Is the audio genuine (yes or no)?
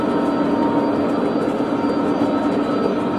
yes